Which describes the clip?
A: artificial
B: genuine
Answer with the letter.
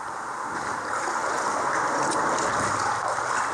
B